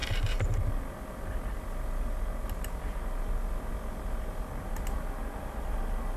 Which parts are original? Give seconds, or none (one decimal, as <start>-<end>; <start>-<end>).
0.0-6.2

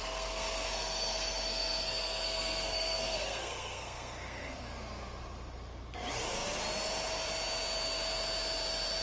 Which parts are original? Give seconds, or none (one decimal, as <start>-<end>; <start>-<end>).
4.5-9.0